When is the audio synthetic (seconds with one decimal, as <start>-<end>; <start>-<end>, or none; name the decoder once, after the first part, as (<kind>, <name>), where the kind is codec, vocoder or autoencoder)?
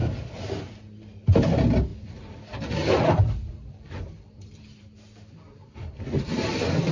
0.0-0.6 (vocoder, BigVGAN v2); 1.9-6.0